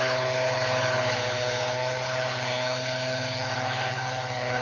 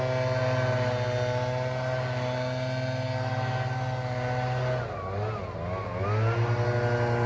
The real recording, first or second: second